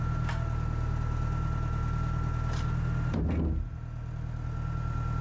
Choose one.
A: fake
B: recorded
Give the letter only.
B